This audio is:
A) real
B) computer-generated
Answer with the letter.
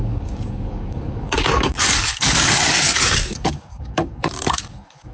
B